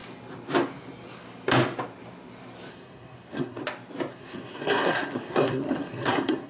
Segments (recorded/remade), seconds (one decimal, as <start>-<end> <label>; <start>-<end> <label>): 0.0-2.7 recorded; 2.7-3.6 remade; 3.6-4.1 recorded; 4.1-6.5 remade